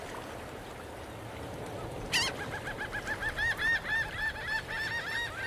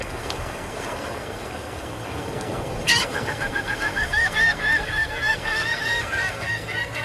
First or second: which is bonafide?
first